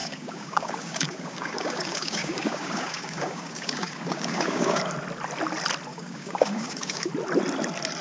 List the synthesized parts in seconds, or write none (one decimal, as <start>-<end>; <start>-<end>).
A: 0.0-4.8; 5.9-7.1